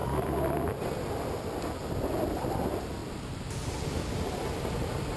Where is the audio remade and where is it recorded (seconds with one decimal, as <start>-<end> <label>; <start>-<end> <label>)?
0.0-2.2 recorded; 2.2-3.0 remade; 3.0-4.6 recorded; 4.6-5.2 remade